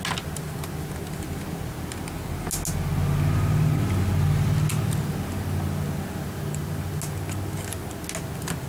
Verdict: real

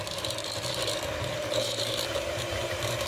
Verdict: fake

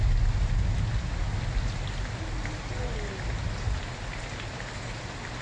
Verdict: real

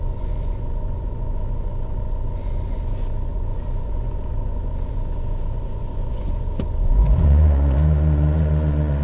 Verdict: fake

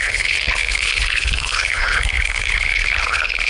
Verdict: fake